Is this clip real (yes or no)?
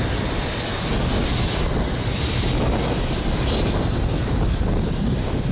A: yes